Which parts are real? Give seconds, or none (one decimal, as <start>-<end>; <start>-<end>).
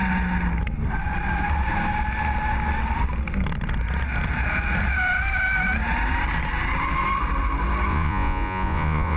0.0-7.9